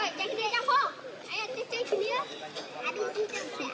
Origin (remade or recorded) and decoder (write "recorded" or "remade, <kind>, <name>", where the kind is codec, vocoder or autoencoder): recorded